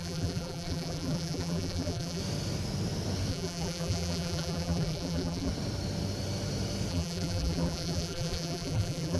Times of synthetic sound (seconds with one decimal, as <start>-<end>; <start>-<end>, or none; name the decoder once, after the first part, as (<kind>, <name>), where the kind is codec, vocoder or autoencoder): 0.0-2.2 (vocoder, BigVGAN v2); 3.3-5.5; 6.9-9.2